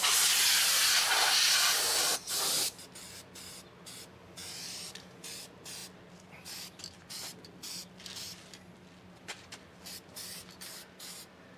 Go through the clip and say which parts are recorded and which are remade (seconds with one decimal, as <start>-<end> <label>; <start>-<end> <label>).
0.0-11.6 recorded